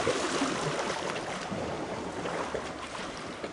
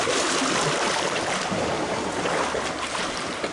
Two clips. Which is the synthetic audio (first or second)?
first